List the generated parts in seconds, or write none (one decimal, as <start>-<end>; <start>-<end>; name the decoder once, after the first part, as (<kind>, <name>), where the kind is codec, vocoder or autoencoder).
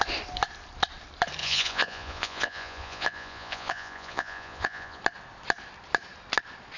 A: 1.4-5.0 (vocoder, Vocos)